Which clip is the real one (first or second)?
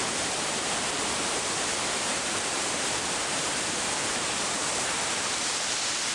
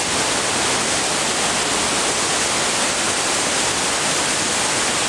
second